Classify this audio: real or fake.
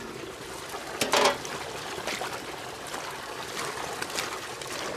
real